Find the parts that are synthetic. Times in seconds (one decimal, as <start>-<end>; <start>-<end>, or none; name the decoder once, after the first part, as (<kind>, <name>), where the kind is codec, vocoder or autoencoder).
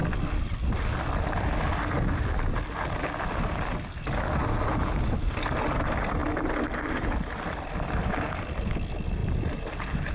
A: 9.2-10.1 (vocoder, BigVGAN v2)